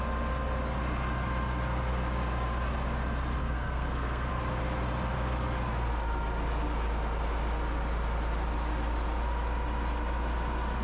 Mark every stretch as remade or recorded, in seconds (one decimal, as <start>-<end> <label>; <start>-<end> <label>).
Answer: 0.0-3.4 recorded; 3.4-4.3 remade; 4.3-10.8 recorded